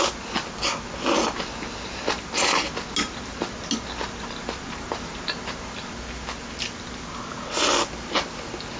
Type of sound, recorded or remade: recorded